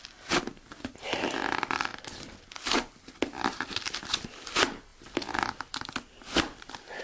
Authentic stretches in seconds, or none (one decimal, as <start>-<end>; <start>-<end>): 0.0-7.0